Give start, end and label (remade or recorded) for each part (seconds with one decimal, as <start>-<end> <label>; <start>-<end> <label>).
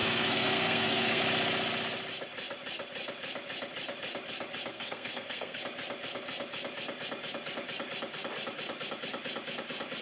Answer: 0.0-1.2 remade; 1.2-4.7 recorded; 4.7-5.6 remade; 5.6-10.0 recorded